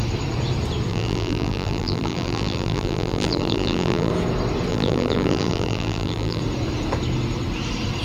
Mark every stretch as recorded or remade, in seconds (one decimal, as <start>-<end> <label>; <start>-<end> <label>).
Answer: 0.0-0.9 recorded; 0.9-4.1 remade; 4.1-4.7 recorded; 4.7-6.4 remade; 6.4-8.0 recorded